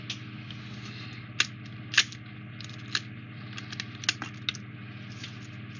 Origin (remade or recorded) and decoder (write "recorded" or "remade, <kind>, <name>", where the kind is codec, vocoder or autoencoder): recorded